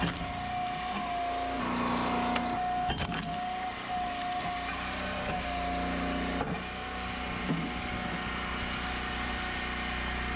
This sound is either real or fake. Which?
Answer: real